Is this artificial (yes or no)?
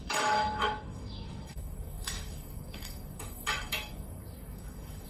yes